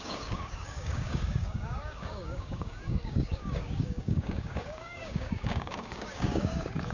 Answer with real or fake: fake